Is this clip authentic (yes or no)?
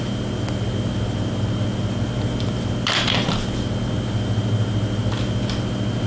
yes